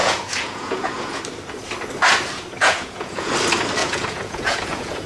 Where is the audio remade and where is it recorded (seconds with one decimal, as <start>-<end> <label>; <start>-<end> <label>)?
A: 0.0-1.2 remade; 1.2-2.6 recorded; 2.6-3.3 remade; 3.3-3.8 recorded; 3.8-5.1 remade